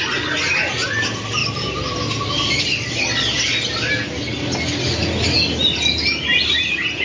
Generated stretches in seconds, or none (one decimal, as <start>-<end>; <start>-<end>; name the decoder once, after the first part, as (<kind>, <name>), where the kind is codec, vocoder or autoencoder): none